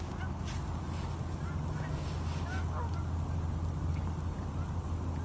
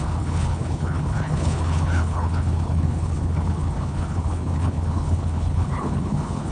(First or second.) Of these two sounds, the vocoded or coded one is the second